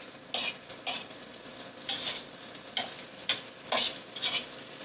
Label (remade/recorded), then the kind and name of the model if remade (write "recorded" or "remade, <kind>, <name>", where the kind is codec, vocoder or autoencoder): recorded